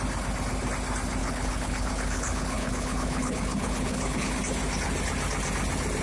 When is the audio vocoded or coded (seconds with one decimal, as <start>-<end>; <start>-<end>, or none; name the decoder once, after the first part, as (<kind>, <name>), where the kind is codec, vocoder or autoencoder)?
1.2-4.4 (codec, HILCodec)